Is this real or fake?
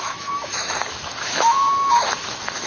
fake